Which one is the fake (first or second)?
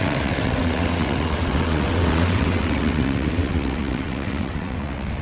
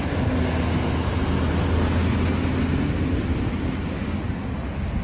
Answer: first